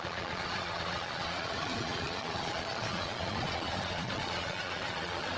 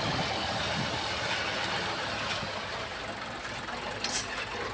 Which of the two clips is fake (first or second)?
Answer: first